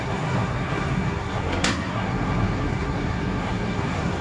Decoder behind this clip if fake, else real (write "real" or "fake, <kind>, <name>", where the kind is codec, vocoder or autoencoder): fake, codec, SNAC